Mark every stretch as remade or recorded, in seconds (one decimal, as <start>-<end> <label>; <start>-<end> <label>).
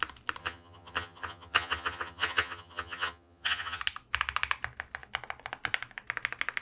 0.0-0.4 recorded; 0.4-3.8 remade; 3.8-6.6 recorded